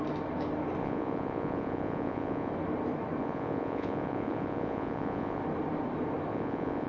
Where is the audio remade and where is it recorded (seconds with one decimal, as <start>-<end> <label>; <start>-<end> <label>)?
0.0-0.8 recorded; 0.8-2.5 remade; 2.5-3.2 recorded; 3.2-5.4 remade; 5.4-6.3 recorded; 6.3-6.9 remade

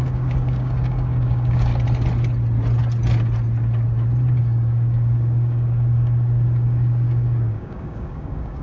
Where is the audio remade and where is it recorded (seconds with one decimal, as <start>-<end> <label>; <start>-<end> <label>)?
0.0-1.7 remade; 1.7-4.4 recorded; 4.4-8.6 remade

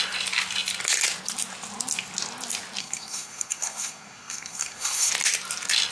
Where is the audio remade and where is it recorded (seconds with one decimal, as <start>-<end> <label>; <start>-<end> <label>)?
0.0-2.8 recorded; 2.8-5.1 remade; 5.1-5.9 recorded

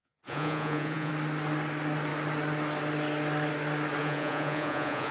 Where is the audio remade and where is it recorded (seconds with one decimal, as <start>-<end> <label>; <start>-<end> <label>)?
0.0-1.1 remade; 1.1-4.0 recorded; 4.0-5.1 remade

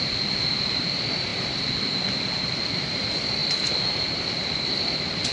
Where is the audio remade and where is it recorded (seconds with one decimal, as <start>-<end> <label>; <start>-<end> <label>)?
0.0-3.4 recorded; 3.4-4.8 remade; 4.8-5.3 recorded

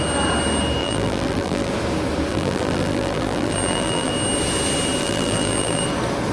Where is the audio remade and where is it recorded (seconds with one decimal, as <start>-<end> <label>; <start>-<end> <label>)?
0.0-0.8 recorded; 0.8-1.7 remade; 1.7-2.3 recorded; 2.3-4.1 remade; 4.1-5.0 recorded; 5.0-5.8 remade; 5.8-6.3 recorded